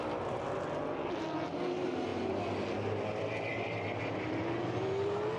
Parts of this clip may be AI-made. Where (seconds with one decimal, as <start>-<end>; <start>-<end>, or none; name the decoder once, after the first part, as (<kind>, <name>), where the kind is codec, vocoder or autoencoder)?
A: none